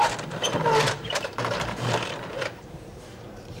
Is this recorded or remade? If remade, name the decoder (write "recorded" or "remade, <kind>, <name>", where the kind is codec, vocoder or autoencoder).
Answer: remade, vocoder, BigVGAN v2